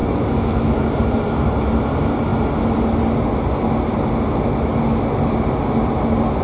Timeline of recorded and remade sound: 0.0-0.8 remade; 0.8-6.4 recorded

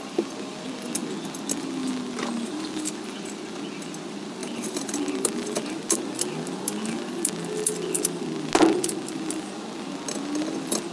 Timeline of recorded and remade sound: 0.0-10.9 recorded

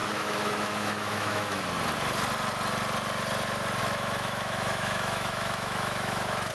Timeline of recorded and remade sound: 0.0-1.6 remade; 1.6-3.8 recorded; 3.8-6.5 remade

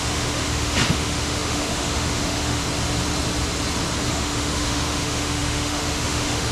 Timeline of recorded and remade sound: 0.0-2.6 remade; 2.6-4.1 recorded; 4.1-6.5 remade

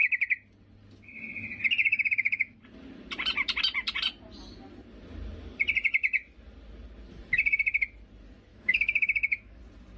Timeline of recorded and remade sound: 0.0-1.8 recorded; 1.8-2.6 remade; 2.6-8.5 recorded; 8.5-9.6 remade; 9.6-10.0 recorded

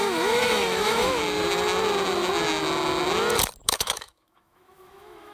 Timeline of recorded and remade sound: 0.0-1.2 remade; 1.2-3.6 recorded; 3.6-5.3 remade

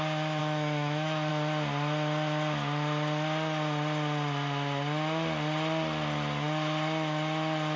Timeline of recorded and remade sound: 0.0-0.4 recorded; 0.4-1.3 remade; 1.3-7.8 recorded

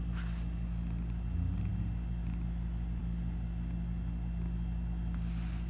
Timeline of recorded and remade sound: 0.0-5.7 recorded